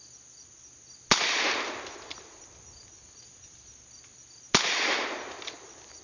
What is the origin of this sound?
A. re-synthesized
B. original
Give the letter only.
B